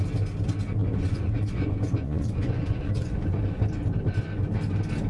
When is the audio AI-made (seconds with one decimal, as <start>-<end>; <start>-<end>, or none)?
0.8-3.6